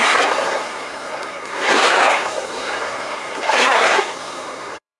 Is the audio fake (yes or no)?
yes